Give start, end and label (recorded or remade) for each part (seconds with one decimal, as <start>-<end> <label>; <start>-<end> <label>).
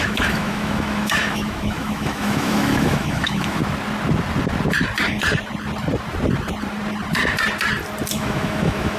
0.0-3.6 remade; 3.6-8.1 recorded; 8.1-9.0 remade